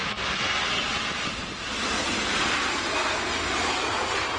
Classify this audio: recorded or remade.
recorded